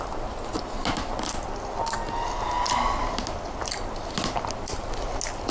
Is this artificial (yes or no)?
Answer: no